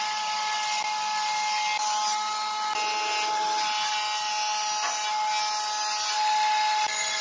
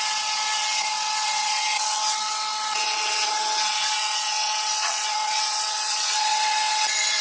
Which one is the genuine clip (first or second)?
first